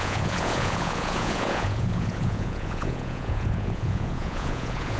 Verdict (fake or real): fake